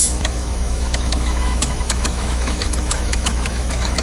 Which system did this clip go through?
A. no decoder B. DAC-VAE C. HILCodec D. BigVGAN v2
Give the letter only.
B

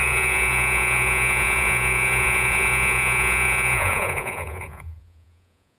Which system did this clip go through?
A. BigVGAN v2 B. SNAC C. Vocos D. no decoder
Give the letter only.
C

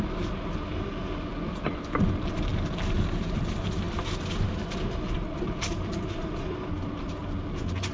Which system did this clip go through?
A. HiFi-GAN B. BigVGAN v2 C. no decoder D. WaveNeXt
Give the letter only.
C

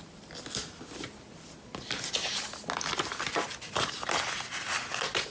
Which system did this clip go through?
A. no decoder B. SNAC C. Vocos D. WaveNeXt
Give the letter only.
A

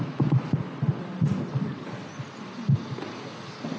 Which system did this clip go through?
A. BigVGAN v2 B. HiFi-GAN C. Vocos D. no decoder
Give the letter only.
D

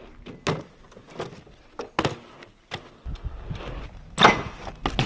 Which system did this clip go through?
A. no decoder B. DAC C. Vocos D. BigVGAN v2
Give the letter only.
A